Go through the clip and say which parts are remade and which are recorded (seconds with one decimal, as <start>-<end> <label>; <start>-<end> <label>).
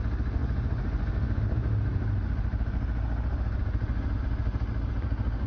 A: 0.0-0.4 recorded; 0.4-1.4 remade; 1.4-5.5 recorded